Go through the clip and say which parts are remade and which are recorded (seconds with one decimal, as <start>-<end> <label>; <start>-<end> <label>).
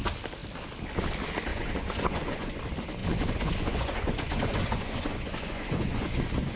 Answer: 0.0-1.5 recorded; 1.5-2.6 remade; 2.6-3.0 recorded; 3.0-6.6 remade